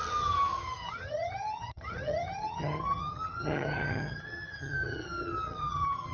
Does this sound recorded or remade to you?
remade